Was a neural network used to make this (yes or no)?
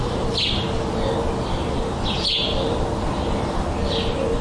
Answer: no